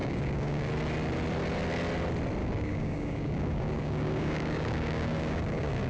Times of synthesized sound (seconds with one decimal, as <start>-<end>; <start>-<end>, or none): 0.0-0.7; 2.4-5.9